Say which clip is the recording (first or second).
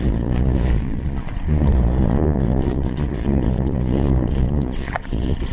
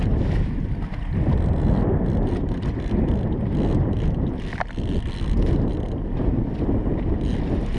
second